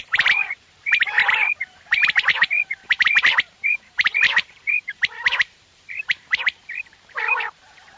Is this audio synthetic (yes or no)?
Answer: yes